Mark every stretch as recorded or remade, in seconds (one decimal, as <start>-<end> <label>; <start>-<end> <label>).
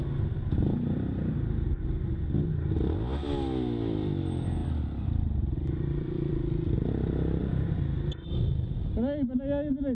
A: 0.0-4.6 recorded; 4.6-6.9 remade; 6.9-9.9 recorded